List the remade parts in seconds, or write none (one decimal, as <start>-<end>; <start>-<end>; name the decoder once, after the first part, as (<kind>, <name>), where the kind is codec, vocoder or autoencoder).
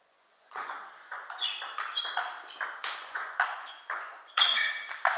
0.0-1.5 (vocoder, Vocos); 2.7-4.5